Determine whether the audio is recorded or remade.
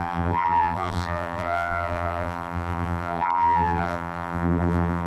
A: remade